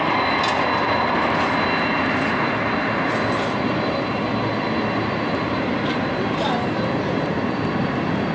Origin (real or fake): real